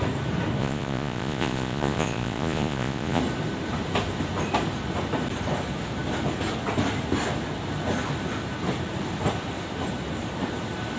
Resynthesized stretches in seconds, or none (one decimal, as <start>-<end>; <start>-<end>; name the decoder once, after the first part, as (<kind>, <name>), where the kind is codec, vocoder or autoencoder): 0.6-3.2 (vocoder, Vocos)